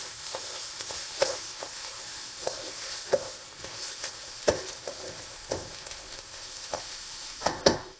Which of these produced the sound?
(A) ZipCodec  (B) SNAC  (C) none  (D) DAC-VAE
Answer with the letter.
A